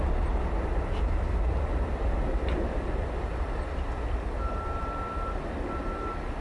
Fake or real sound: real